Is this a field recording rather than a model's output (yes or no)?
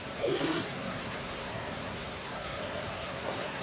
no